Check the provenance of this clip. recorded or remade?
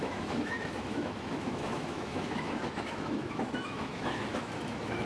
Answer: remade